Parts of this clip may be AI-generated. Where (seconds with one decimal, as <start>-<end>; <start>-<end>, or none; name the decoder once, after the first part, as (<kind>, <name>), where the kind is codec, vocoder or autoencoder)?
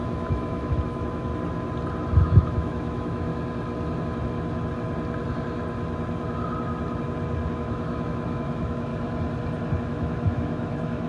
0.0-1.3 (autoencoder, DAC-VAE); 2.2-3.3; 7.5-8.9; 9.8-11.1